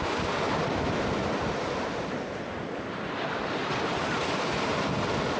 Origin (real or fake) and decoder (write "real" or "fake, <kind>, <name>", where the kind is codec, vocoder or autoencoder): real